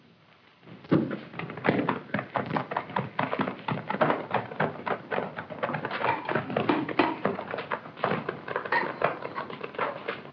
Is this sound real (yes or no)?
yes